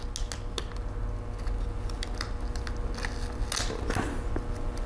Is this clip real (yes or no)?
yes